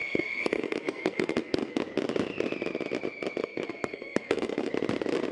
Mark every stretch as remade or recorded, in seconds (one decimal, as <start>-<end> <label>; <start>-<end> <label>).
0.0-1.8 remade; 1.8-3.4 recorded; 3.4-4.7 remade; 4.7-5.3 recorded

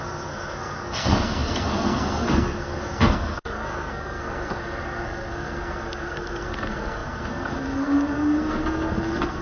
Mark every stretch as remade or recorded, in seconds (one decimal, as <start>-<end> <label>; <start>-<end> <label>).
0.0-9.4 remade

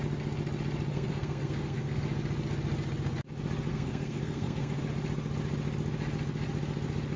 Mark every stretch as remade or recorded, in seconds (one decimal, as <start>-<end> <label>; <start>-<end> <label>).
0.0-0.9 recorded; 0.9-2.0 remade; 2.0-3.7 recorded; 3.7-4.8 remade; 4.8-7.2 recorded

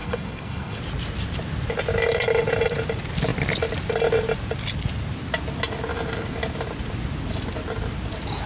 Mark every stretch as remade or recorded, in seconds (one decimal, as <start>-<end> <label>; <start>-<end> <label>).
0.0-0.8 remade; 0.8-8.5 recorded

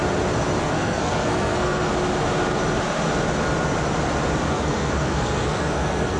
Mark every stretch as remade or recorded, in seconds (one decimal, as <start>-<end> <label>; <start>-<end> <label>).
0.0-0.6 recorded; 0.6-1.9 remade; 1.9-4.5 recorded; 4.5-6.2 remade